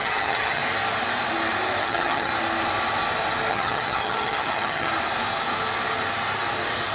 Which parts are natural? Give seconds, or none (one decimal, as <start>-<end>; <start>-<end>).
0.6-1.8; 2.3-3.5; 4.9-6.9